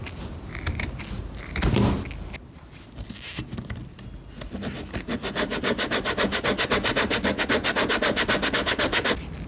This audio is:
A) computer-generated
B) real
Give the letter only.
B